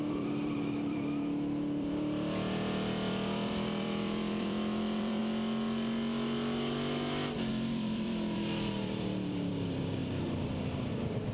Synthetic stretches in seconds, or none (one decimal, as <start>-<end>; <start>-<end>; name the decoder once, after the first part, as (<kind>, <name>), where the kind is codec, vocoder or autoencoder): 0.0-5.2 (vocoder, BigVGAN v2); 7.5-10.0; 10.9-11.3